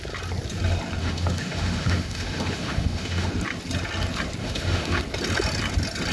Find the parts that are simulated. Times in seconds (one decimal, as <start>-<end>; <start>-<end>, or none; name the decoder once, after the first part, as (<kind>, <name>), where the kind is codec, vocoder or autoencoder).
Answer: 1.0-3.3 (autoencoder, DAC-VAE); 4.4-5.0